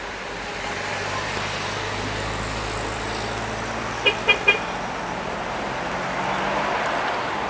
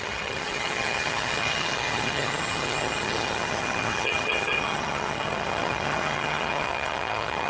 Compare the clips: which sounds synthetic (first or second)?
second